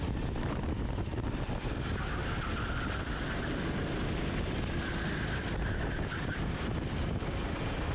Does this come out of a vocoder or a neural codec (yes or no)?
no